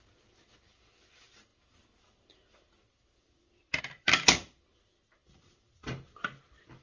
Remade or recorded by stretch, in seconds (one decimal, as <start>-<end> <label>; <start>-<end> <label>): 0.0-6.8 recorded